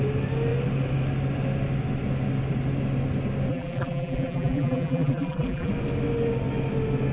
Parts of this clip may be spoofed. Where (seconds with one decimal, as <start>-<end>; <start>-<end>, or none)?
3.5-5.7